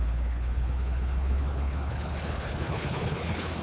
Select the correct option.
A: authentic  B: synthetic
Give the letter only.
B